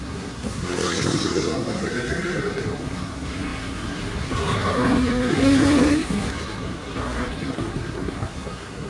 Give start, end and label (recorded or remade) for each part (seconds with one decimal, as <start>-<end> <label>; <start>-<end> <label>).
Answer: 0.0-8.9 remade